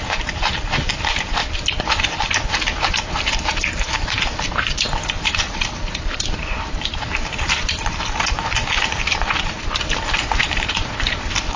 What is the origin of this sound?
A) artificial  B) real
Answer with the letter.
A